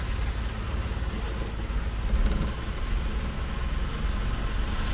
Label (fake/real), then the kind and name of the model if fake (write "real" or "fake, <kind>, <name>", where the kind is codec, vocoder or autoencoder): real